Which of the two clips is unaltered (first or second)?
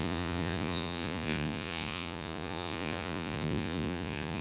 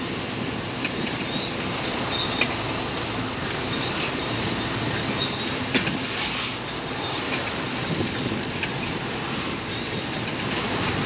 second